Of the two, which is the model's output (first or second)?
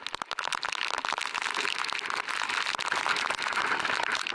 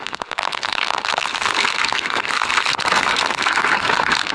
second